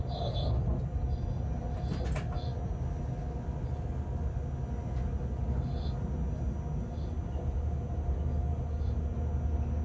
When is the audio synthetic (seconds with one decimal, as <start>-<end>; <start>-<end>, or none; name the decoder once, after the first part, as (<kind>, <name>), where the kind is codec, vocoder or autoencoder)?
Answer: none